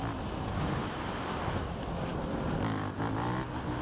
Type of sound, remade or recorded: recorded